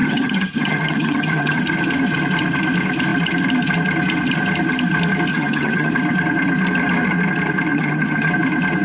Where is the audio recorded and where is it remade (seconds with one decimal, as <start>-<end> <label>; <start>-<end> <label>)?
0.0-1.6 remade; 1.6-5.3 recorded; 5.3-5.9 remade; 5.9-7.7 recorded; 7.7-8.3 remade; 8.3-8.8 recorded